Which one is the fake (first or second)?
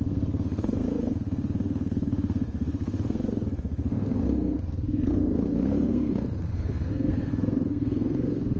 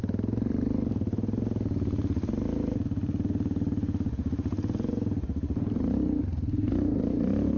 first